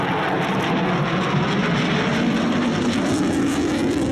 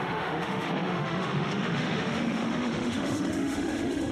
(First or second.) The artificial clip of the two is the second